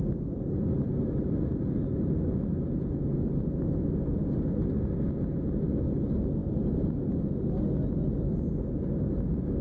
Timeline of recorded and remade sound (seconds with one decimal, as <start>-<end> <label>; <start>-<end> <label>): 0.0-9.6 recorded